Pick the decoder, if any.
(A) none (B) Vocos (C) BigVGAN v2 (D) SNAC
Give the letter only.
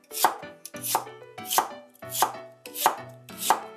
A